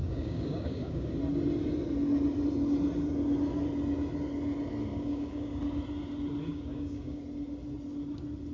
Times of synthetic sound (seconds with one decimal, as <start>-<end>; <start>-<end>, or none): 0.0-1.1; 4.9-5.6; 6.5-7.2